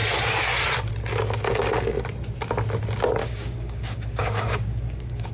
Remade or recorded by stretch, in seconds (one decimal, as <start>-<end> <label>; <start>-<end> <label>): 0.0-3.2 recorded; 3.2-5.3 remade